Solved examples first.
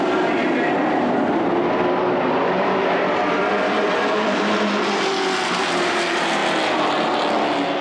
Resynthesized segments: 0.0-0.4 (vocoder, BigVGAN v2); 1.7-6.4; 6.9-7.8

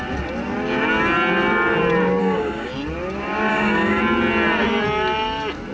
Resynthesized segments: 2.2-2.7 (codec, DAC); 3.5-4.0

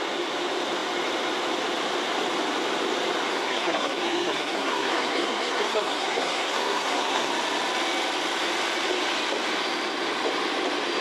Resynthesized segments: 3.3-7.3 (codec, SNAC)

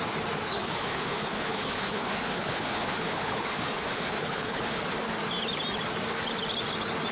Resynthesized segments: 0.5-4.8 (codec, HILCodec)

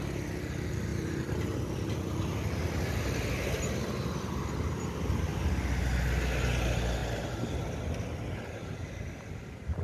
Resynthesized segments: none